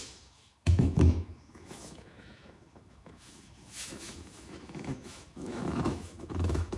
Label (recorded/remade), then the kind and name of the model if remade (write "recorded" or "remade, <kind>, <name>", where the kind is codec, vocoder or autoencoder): remade, autoencoder, DAC-VAE